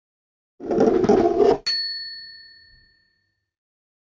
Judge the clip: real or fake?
real